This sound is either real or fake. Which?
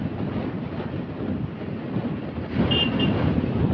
real